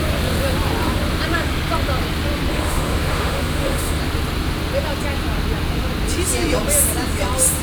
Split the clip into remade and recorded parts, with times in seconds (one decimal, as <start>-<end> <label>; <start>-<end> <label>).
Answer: 0.0-2.5 recorded; 2.5-4.0 remade; 4.0-7.6 recorded